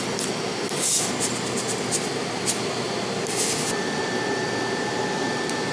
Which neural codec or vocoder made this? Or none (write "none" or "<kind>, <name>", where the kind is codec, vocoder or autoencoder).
none